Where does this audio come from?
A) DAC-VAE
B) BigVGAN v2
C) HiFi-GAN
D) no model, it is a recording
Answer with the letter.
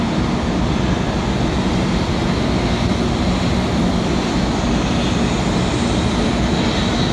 D